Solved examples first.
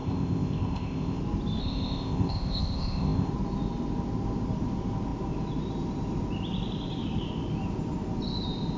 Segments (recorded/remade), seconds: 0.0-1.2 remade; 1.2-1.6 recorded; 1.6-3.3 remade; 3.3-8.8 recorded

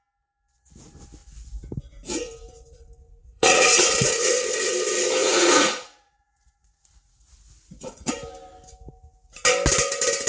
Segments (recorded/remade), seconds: 0.0-3.2 recorded; 3.2-4.3 remade; 4.3-5.2 recorded; 5.2-8.1 remade; 8.1-10.3 recorded

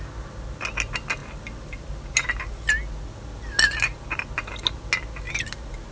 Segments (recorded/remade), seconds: 0.0-5.9 recorded